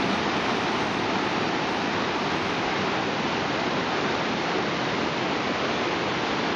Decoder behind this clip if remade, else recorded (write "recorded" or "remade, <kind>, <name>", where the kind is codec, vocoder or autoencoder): recorded